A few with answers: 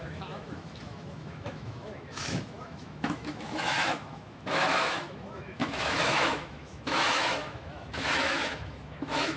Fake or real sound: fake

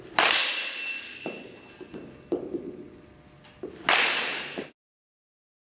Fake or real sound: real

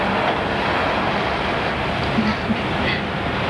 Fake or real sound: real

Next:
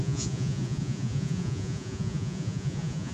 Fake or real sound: fake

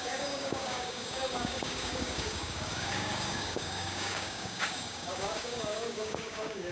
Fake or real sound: fake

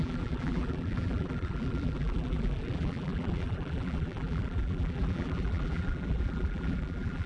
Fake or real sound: fake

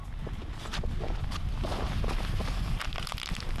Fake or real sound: real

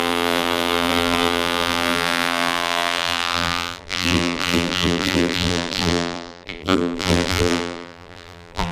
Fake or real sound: fake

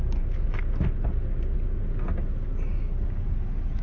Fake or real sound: real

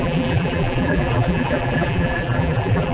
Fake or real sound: fake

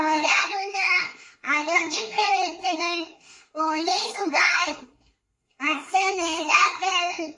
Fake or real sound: fake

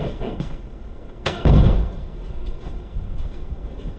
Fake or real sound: fake